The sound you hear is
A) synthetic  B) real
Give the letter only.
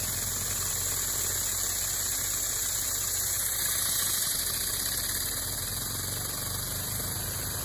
B